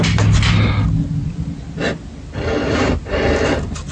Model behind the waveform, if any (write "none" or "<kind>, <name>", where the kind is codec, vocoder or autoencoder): none